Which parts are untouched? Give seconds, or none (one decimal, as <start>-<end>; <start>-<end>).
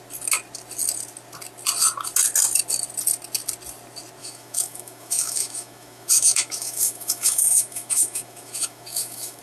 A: 0.0-4.2